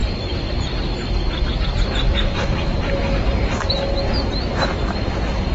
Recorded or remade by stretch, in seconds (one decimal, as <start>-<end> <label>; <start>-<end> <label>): 0.0-5.5 recorded